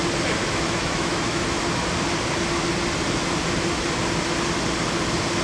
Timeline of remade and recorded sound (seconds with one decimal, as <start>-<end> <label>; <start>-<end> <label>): 0.0-0.4 recorded; 0.4-1.4 remade; 1.4-5.4 recorded